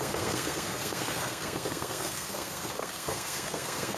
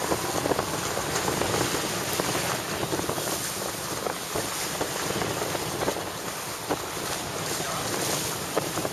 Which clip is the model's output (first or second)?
first